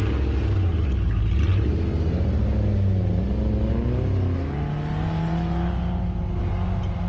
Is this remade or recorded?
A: recorded